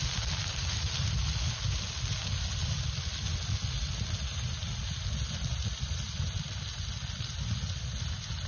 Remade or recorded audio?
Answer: recorded